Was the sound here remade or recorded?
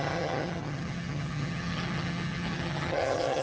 remade